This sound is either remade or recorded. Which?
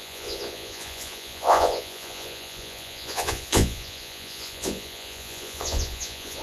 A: remade